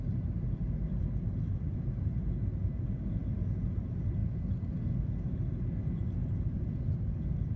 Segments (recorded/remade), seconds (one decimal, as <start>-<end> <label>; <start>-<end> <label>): 0.0-7.6 recorded